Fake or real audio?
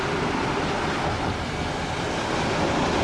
real